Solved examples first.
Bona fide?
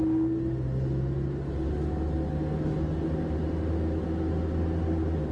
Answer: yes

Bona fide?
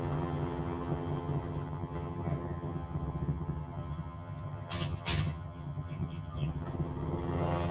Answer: no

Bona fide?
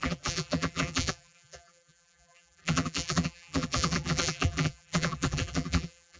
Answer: no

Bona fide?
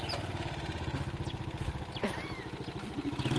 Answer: yes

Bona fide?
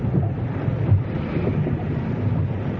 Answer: yes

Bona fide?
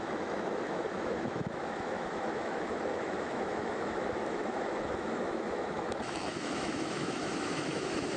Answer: no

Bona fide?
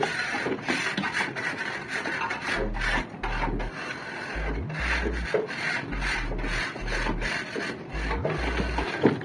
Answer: yes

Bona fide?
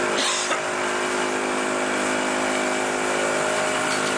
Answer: yes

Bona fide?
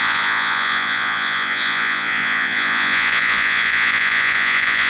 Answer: no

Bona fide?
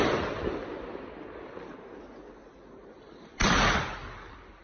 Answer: yes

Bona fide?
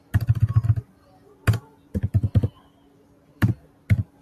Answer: yes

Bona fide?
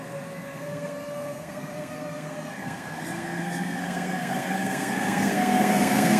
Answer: no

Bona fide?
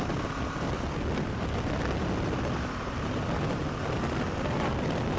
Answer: yes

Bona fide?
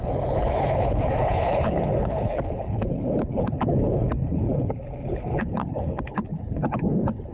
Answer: no